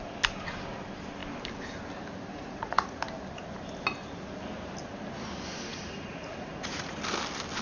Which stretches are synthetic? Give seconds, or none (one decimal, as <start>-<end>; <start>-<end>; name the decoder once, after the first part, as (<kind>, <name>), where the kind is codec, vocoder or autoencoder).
2.3-3.0 (vocoder, Vocos); 5.7-7.0